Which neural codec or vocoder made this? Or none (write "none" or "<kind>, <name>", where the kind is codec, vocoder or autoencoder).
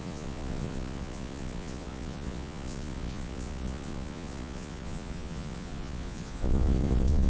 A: vocoder, Vocos